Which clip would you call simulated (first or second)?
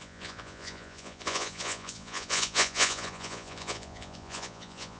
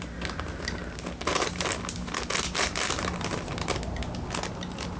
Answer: first